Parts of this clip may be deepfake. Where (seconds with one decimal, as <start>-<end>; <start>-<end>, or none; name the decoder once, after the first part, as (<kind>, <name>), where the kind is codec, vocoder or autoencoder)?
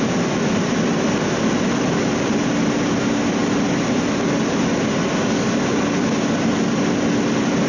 none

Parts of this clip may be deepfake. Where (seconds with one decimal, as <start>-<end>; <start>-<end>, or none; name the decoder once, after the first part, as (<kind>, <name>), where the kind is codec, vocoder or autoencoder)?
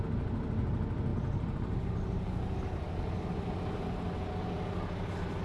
none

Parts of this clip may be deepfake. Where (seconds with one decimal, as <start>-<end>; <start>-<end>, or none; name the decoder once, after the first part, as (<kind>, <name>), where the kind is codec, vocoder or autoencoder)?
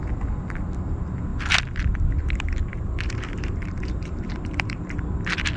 2.7-5.0 (vocoder, BigVGAN v2)